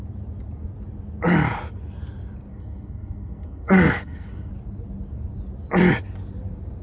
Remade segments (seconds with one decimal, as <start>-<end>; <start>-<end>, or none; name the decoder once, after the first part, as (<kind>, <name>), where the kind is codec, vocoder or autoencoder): 2.5-4.5 (codec, SNAC)